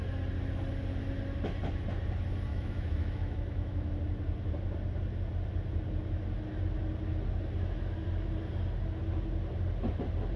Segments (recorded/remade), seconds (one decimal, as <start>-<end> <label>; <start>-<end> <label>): 0.0-2.5 recorded; 2.5-3.9 remade; 3.9-10.4 recorded